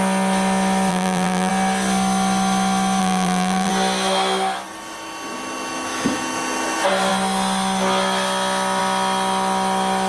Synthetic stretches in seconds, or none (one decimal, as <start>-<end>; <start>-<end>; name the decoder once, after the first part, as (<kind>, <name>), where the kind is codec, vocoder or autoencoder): 0.9-1.5 (vocoder, BigVGAN v2); 3.0-3.7